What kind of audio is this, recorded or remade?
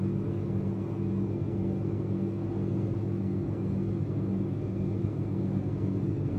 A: remade